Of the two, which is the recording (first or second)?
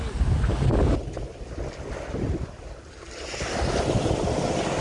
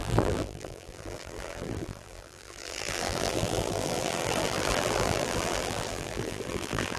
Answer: first